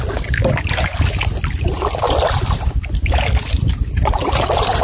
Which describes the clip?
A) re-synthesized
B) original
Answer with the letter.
B